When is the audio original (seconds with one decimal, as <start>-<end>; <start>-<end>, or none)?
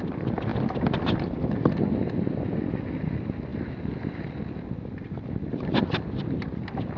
0.0-7.0